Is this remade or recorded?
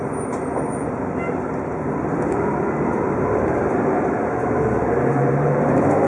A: remade